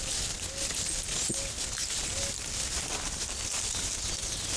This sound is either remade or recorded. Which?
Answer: recorded